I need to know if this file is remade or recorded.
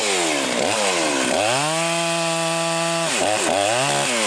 recorded